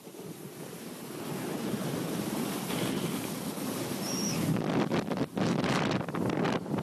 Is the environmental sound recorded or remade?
remade